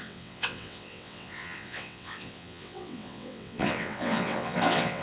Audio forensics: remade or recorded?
remade